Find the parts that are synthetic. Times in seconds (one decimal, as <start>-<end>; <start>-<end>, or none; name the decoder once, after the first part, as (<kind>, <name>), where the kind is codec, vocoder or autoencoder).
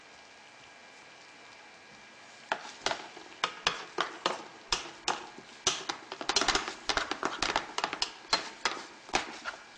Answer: none